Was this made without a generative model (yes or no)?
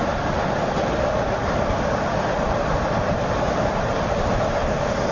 no